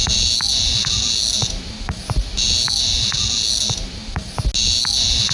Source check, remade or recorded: recorded